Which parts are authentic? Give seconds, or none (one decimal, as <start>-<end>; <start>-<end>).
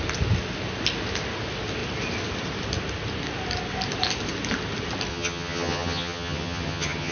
0.0-5.1